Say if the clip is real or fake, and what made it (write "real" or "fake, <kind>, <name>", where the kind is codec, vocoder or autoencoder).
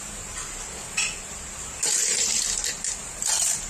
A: real